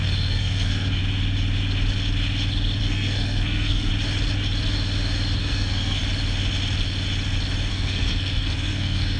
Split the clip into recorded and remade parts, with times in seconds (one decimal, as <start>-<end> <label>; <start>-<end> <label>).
0.0-1.0 remade; 1.0-2.8 recorded; 2.8-3.9 remade; 3.9-5.4 recorded; 5.4-6.0 remade; 6.0-7.7 recorded; 7.7-9.2 remade

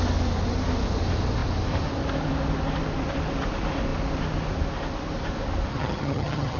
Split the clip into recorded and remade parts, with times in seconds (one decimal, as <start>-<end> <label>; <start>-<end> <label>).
0.0-5.7 recorded; 5.7-6.6 remade

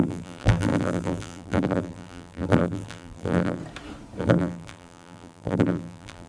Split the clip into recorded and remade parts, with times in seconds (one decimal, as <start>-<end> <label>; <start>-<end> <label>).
0.0-3.6 remade; 3.6-4.2 recorded; 4.2-6.3 remade

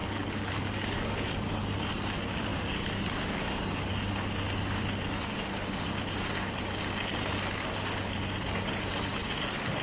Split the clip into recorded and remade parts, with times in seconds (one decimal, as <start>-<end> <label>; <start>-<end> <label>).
0.0-1.3 remade; 1.3-2.5 recorded; 2.5-3.9 remade; 3.9-9.8 recorded

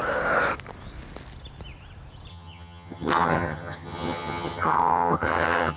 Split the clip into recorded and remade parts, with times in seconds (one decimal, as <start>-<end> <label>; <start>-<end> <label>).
0.0-2.3 recorded; 2.3-5.8 remade